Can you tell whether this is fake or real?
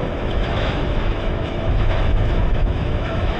fake